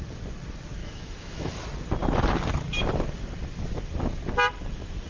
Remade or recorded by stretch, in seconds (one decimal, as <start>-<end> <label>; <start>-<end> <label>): 0.0-0.8 recorded; 0.8-1.5 remade; 1.5-5.1 recorded